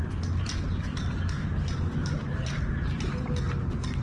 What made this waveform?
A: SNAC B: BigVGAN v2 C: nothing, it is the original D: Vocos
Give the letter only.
C